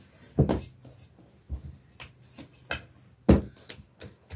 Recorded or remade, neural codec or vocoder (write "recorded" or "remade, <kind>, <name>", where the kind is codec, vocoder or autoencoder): recorded